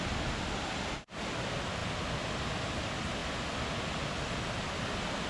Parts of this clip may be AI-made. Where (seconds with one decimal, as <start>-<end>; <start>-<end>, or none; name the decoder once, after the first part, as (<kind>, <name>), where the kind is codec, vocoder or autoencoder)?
none